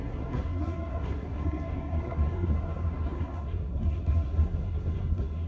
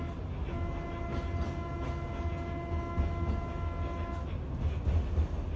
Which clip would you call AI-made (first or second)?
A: first